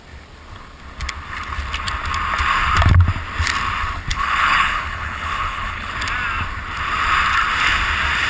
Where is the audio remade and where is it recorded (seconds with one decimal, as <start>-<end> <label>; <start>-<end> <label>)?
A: 0.0-4.1 recorded; 4.1-5.9 remade; 5.9-8.3 recorded